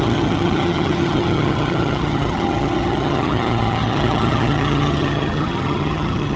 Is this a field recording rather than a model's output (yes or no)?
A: no